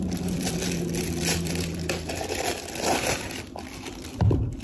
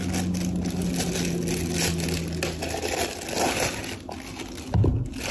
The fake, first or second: first